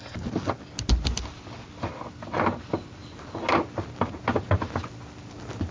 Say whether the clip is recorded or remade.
recorded